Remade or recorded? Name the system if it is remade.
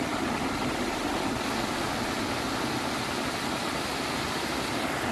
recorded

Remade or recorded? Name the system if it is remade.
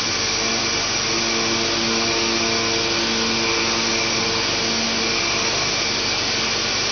recorded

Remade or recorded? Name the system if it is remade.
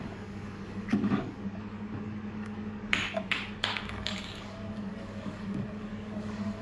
remade, codec, DAC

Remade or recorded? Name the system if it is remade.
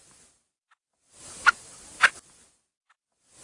recorded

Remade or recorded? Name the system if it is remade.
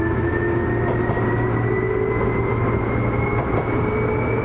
recorded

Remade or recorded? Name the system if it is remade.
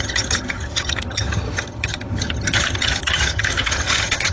remade, vocoder, HiFi-GAN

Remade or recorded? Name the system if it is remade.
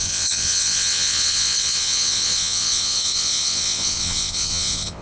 remade, vocoder, WaveNeXt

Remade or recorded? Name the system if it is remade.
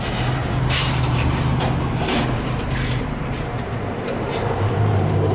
remade, vocoder, BigVGAN v2